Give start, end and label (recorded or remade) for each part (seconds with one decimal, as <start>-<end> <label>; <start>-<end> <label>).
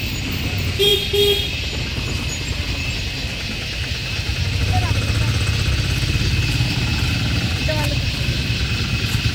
0.0-9.3 recorded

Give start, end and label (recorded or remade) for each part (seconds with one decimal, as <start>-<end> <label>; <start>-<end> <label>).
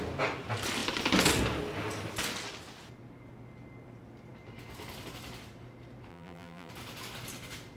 0.0-6.1 recorded; 6.1-6.7 remade; 6.7-7.8 recorded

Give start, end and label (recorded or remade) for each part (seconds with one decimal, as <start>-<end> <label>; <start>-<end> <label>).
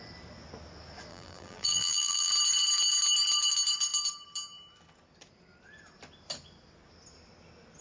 0.0-1.1 recorded; 1.1-2.3 remade; 2.3-7.8 recorded